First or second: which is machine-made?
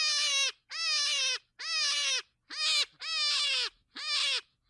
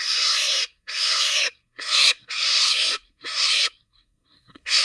second